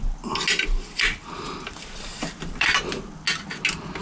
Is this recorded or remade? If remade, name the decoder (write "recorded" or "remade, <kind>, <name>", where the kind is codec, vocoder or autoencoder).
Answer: recorded